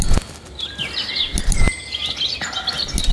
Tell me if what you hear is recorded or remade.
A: recorded